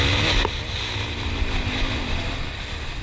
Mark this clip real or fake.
real